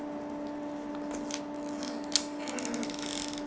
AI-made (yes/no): no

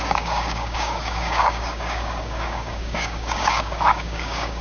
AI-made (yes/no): yes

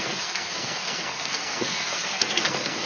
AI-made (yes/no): yes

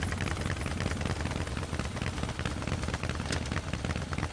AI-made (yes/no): no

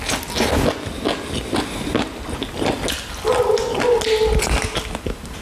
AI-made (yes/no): no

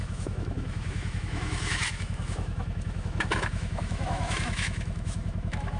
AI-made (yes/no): yes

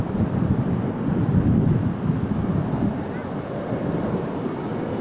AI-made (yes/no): no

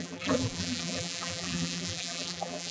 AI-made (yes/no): yes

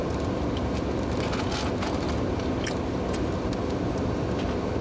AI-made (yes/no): no